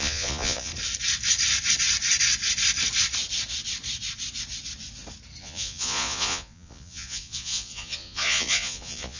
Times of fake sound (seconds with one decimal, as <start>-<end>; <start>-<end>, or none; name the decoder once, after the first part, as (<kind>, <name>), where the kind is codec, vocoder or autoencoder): 0.0-0.7 (vocoder, Vocos); 5.4-9.2